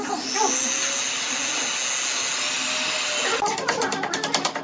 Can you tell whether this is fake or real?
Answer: real